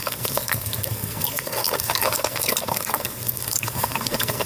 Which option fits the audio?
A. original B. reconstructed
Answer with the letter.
B